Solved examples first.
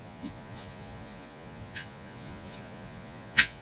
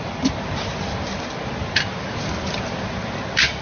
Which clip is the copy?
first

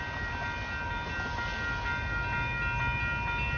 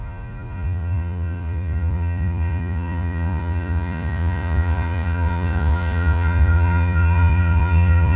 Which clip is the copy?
second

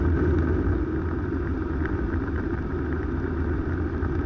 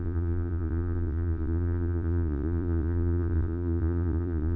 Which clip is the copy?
second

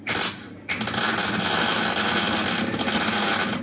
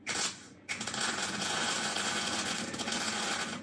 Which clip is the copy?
second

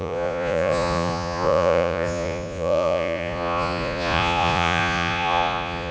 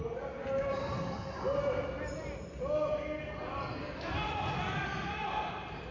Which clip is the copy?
first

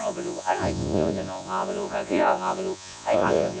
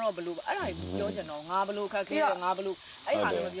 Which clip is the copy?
first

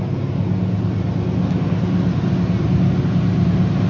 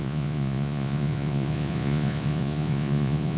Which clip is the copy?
second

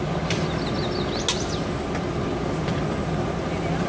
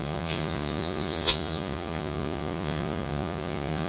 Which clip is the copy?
second